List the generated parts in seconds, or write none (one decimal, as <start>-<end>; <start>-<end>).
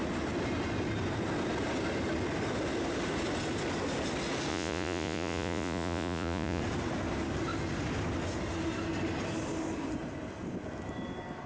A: 4.5-6.6